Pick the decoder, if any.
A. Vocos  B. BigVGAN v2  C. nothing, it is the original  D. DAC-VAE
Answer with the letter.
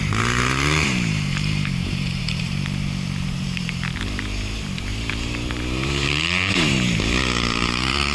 B